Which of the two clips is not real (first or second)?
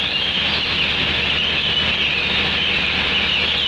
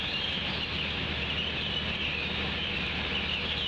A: second